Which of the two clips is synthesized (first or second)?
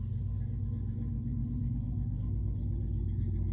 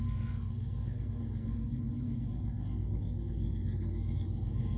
second